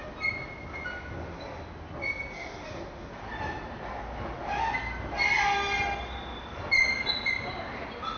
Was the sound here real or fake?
real